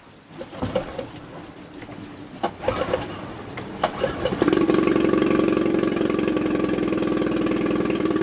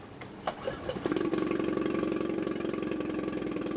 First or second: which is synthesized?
second